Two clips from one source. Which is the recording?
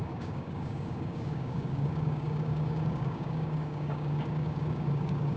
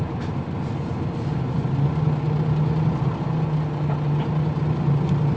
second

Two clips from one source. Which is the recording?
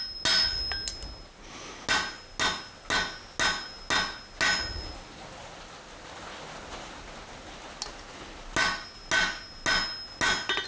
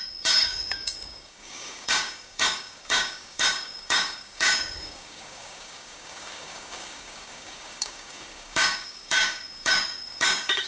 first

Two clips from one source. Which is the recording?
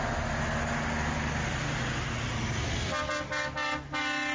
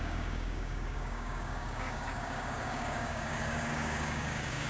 first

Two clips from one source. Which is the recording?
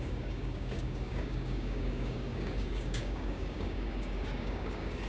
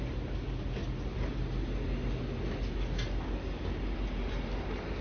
second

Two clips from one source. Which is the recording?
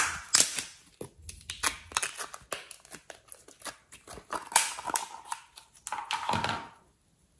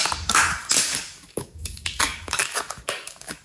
first